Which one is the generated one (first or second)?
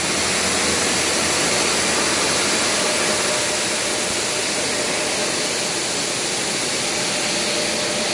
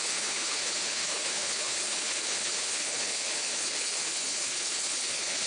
second